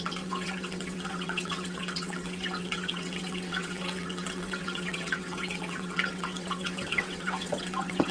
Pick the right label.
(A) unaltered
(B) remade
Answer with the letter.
B